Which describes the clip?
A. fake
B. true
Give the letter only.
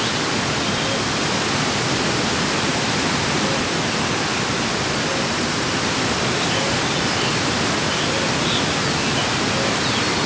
B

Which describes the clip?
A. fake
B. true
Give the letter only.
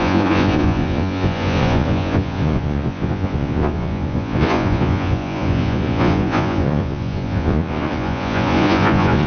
A